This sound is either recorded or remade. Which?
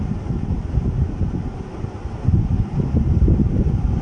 recorded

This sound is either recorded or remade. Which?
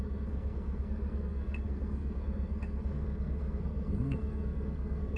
remade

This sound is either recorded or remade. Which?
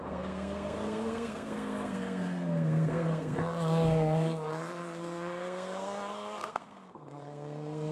remade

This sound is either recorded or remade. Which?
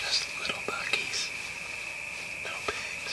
recorded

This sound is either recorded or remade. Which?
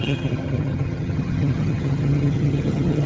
remade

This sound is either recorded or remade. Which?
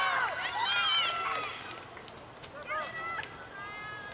recorded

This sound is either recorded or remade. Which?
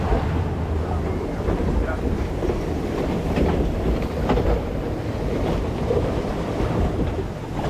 remade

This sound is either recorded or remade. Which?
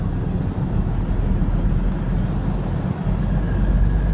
recorded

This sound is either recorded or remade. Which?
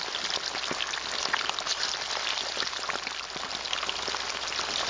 recorded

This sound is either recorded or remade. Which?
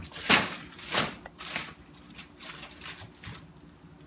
recorded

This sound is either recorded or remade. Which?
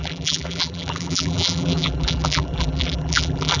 remade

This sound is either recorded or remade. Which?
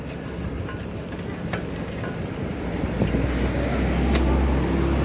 recorded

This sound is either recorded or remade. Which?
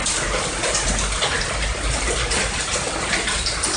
recorded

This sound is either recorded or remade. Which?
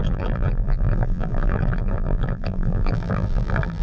remade